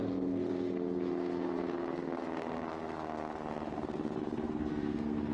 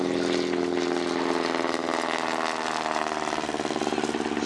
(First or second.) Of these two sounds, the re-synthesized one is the first